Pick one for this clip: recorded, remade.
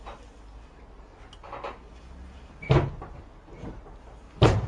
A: recorded